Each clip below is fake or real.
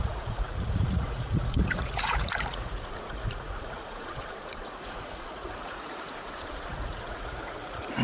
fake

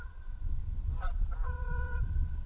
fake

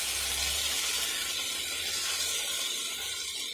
real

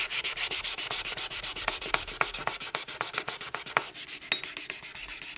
real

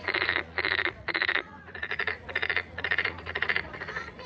fake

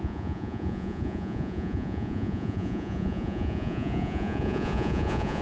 fake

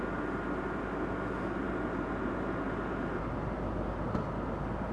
real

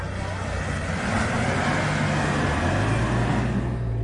real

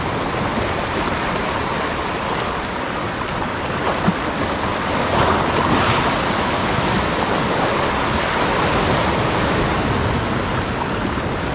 real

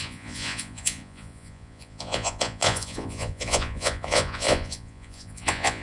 fake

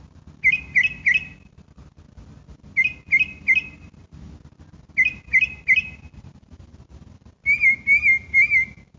real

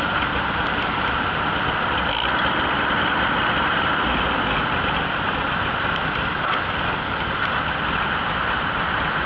real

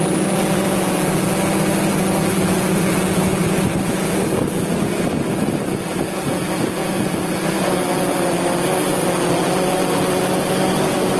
real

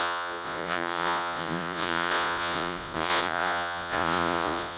fake